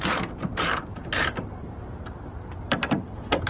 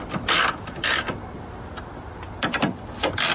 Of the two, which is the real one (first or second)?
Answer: second